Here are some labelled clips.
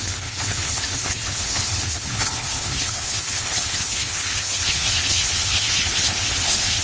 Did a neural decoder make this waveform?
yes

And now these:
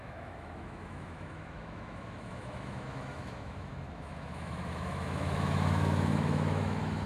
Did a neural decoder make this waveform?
yes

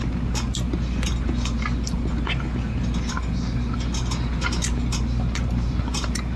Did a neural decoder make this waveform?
no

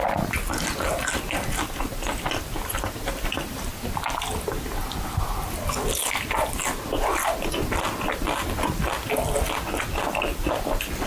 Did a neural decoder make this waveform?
no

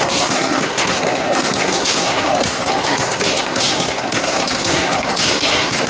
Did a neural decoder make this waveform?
yes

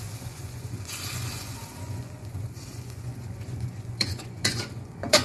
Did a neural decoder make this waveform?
yes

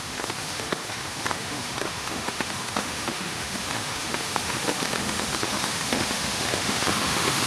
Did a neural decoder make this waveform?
yes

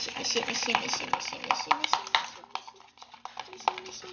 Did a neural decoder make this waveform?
no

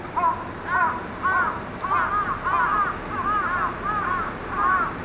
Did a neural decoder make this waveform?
no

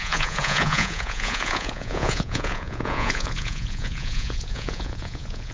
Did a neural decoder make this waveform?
yes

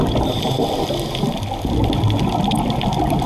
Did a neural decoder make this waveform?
yes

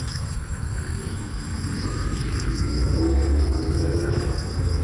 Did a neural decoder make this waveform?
yes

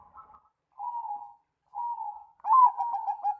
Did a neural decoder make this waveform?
no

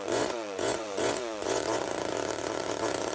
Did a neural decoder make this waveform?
yes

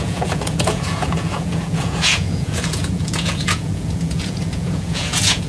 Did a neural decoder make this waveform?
yes